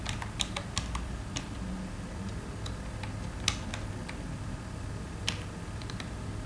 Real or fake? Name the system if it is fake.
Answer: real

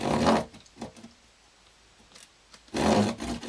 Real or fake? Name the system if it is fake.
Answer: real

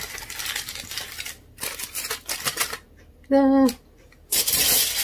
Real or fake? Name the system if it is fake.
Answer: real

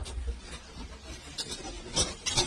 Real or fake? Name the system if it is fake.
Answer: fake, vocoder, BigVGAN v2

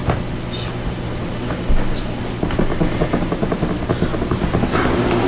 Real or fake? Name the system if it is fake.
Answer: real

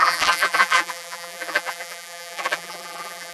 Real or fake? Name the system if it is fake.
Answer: fake, vocoder, BigVGAN v2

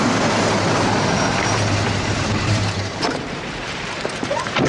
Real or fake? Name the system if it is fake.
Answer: fake, vocoder, BigVGAN v2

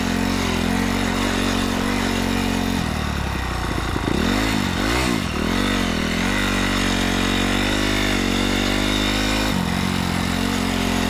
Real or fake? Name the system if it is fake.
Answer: real